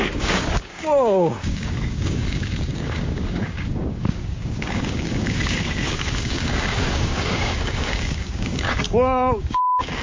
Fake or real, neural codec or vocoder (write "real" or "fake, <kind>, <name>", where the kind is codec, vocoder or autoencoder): fake, codec, DAC